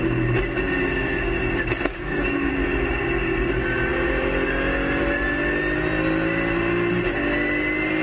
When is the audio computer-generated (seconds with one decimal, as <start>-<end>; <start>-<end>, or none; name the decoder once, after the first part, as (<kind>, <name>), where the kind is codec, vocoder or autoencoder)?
1.9-2.5 (codec, DAC)